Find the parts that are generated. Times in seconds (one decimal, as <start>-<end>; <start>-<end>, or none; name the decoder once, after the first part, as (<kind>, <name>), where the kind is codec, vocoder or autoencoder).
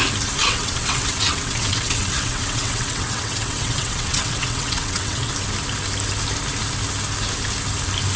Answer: 0.4-5.3 (vocoder, WaveNeXt)